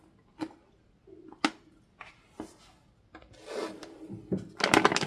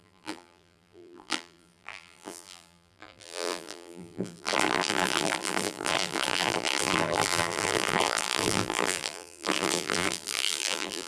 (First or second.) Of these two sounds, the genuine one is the first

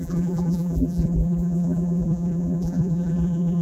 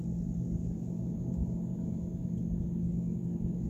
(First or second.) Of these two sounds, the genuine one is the second